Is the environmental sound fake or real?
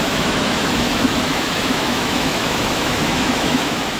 fake